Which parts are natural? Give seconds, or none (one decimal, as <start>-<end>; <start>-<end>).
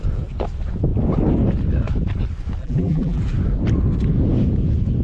0.0-2.6; 3.2-5.0